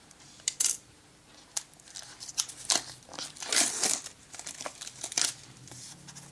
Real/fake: real